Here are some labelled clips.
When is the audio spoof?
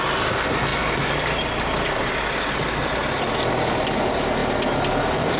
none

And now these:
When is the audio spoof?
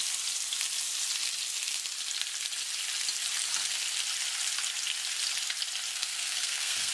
5.9-6.9 (codec, SNAC)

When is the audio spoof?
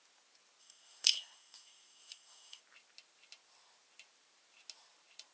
0.6-2.6 (codec, SNAC)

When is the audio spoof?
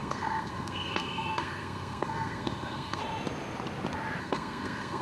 0.0-3.0 (codec, SNAC); 4.2-5.0